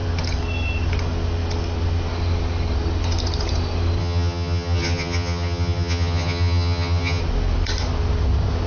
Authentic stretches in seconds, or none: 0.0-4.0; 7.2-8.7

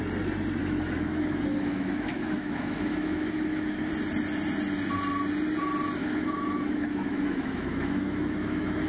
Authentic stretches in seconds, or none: 0.0-0.6; 3.9-6.0

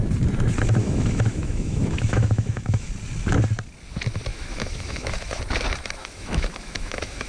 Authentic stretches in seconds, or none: 0.0-0.8; 2.9-4.3; 5.4-6.0

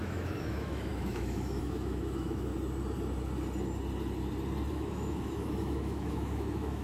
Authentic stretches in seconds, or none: 2.5-4.7

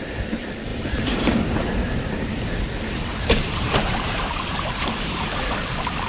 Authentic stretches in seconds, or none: 0.0-0.7; 2.5-3.1; 5.6-6.1

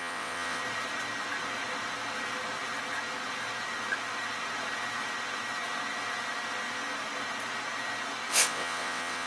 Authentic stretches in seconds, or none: 0.6-8.3

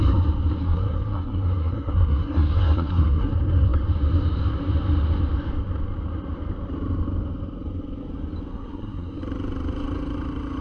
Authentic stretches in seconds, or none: 0.0-0.6; 3.3-8.5; 9.2-10.6

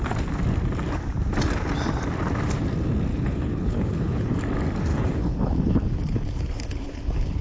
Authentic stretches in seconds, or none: 0.0-3.1; 4.4-4.9